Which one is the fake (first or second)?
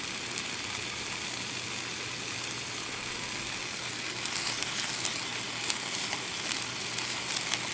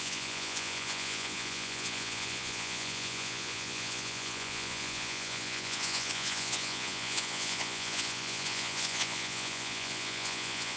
second